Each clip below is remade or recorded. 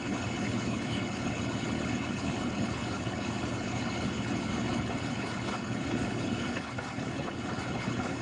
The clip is remade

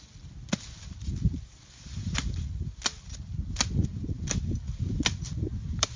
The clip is recorded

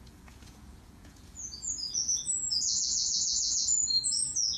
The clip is remade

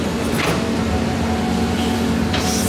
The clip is recorded